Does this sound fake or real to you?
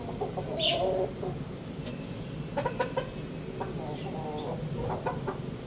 real